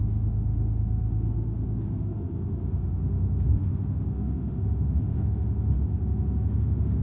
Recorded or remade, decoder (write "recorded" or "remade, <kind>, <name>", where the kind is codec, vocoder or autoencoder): remade, autoencoder, DAC-VAE